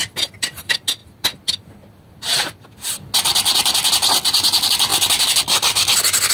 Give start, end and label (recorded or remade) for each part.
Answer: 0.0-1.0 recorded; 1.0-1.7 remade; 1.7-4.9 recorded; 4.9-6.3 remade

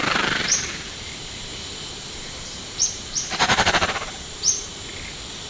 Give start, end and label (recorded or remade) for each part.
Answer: 0.0-4.7 remade; 4.7-5.5 recorded

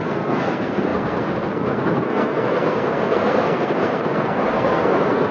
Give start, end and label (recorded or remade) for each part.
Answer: 0.0-5.3 remade

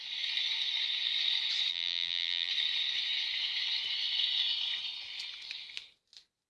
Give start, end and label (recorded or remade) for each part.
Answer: 0.0-1.7 recorded; 1.7-2.5 remade; 2.5-6.5 recorded

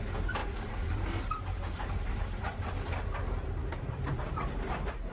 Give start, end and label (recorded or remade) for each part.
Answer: 0.0-0.4 recorded; 0.4-2.2 remade; 2.2-3.6 recorded; 3.6-5.1 remade

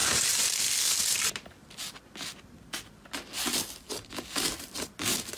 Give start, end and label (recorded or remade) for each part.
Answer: 0.0-2.0 remade; 2.0-3.5 recorded; 3.5-4.1 remade; 4.1-5.4 recorded

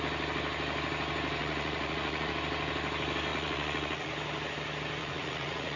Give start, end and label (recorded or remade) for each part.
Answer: 0.0-1.4 recorded; 1.4-2.3 remade; 2.3-3.3 recorded; 3.3-4.1 remade; 4.1-5.0 recorded; 5.0-5.8 remade

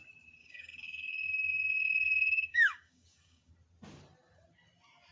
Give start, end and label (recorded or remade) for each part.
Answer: 0.0-0.4 recorded; 0.4-3.5 remade; 3.5-5.1 recorded